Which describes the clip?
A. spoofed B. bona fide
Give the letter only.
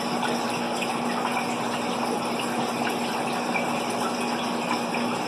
B